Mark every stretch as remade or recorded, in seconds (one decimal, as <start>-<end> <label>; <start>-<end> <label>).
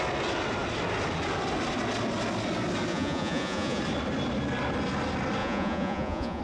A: 0.0-2.9 recorded; 2.9-3.8 remade; 3.8-5.4 recorded; 5.4-6.4 remade